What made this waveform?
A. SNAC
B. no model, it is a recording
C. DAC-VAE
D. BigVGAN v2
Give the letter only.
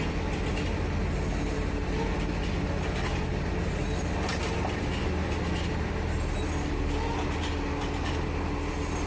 B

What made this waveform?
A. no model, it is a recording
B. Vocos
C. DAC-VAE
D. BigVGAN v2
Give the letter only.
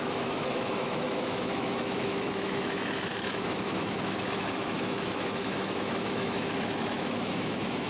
C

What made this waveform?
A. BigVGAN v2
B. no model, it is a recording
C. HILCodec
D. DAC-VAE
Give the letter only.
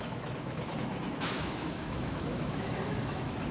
D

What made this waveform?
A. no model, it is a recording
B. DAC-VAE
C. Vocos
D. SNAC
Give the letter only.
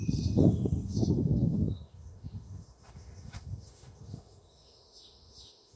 B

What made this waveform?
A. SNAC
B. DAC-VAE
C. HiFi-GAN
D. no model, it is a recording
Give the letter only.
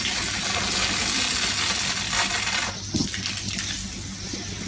D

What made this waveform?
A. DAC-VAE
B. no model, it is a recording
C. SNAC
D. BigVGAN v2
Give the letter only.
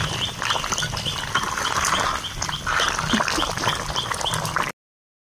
B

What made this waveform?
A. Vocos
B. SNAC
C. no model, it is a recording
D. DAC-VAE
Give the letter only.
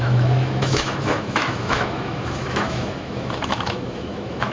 D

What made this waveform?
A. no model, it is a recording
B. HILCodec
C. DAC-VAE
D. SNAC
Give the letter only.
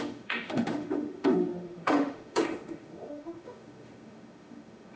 C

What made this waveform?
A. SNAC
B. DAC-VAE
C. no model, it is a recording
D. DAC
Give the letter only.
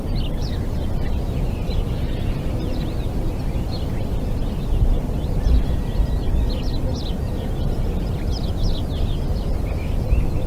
C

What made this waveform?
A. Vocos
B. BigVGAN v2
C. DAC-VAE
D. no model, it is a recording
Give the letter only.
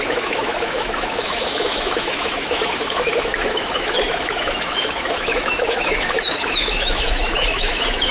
C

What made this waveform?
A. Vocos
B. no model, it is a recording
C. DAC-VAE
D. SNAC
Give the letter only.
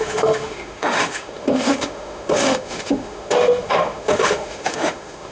C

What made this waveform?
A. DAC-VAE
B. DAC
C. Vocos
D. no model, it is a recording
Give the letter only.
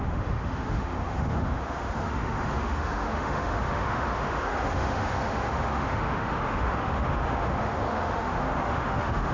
A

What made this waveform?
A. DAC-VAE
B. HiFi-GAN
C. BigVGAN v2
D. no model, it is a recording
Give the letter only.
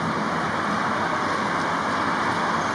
D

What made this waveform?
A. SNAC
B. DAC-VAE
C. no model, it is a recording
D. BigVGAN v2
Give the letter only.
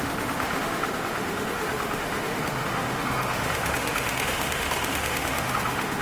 B